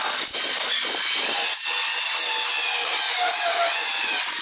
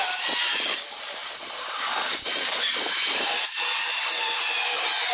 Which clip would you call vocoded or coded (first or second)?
second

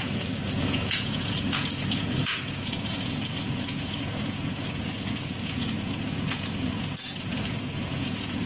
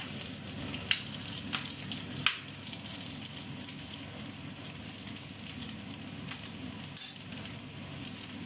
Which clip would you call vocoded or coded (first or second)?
first